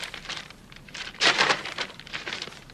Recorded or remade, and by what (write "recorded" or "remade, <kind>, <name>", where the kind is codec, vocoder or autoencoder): remade, vocoder, BigVGAN v2